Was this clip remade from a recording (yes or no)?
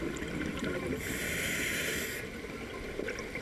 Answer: no